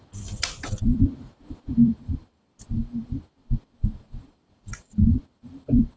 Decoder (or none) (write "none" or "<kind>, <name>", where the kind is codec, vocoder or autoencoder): vocoder, BigVGAN v2